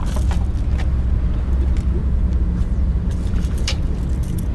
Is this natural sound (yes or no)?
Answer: yes